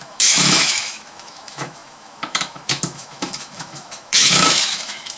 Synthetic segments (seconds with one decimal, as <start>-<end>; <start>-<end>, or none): 0.0-5.2